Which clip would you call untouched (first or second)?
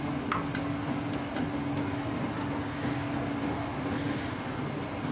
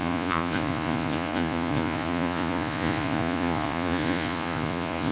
first